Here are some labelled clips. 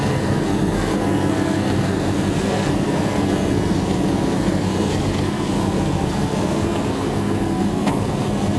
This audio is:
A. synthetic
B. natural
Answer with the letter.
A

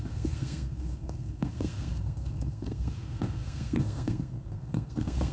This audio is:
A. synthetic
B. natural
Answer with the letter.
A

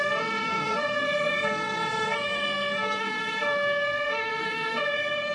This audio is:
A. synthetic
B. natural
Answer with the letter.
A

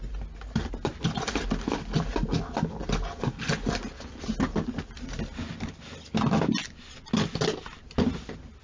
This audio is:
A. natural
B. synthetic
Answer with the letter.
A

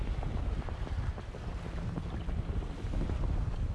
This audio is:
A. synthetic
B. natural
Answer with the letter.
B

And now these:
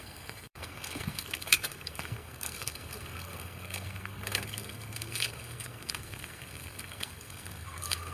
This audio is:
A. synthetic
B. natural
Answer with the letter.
A